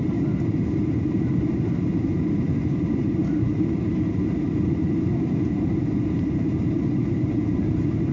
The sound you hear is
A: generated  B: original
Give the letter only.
A